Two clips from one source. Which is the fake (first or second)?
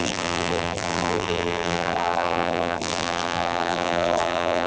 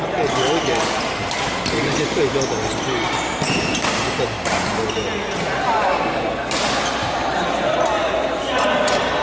first